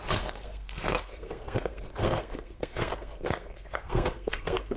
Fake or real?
fake